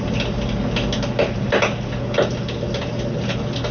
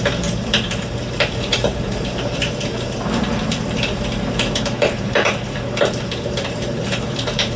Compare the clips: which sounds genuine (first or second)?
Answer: first